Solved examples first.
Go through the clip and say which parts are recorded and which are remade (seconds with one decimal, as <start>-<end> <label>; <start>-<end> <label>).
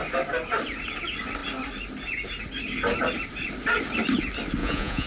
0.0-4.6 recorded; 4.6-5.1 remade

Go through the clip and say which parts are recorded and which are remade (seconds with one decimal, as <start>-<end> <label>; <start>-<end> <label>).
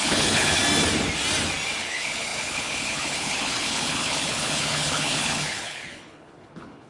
0.0-0.6 remade; 0.6-1.8 recorded; 1.8-6.9 remade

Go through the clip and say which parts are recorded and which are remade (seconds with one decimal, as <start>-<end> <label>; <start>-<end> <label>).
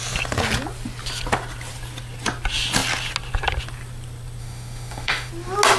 0.0-4.4 recorded; 4.4-5.3 remade; 5.3-5.8 recorded